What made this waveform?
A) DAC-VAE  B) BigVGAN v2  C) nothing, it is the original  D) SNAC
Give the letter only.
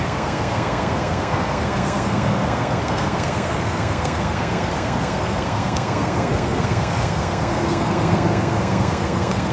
D